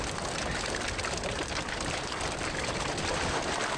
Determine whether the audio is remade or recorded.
recorded